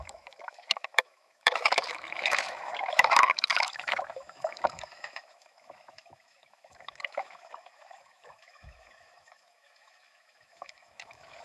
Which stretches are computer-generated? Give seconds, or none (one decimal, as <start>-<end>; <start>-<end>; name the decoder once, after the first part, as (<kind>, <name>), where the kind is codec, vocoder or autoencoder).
0.0-11.4 (autoencoder, DAC-VAE)